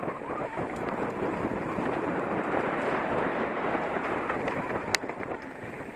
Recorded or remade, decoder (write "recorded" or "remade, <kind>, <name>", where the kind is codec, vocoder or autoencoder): remade, vocoder, BigVGAN v2